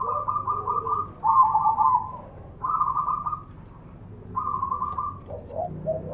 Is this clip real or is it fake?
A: real